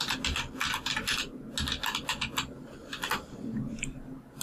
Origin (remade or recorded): recorded